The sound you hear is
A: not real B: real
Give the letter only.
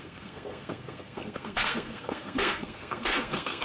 A